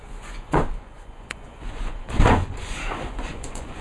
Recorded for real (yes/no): no